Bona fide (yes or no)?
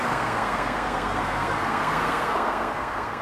no